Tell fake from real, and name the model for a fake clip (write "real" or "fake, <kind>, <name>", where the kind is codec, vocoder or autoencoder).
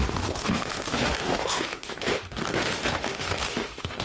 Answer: fake, autoencoder, DAC-VAE